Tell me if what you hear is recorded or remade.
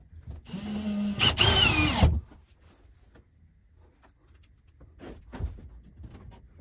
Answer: recorded